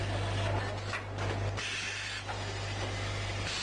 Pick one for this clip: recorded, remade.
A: recorded